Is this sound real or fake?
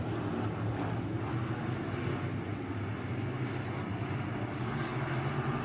real